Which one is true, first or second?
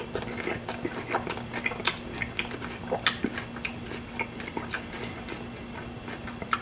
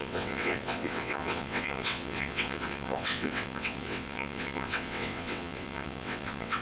first